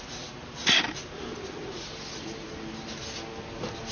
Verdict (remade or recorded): recorded